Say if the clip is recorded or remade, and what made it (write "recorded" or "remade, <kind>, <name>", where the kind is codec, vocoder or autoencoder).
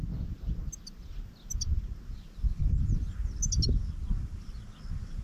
recorded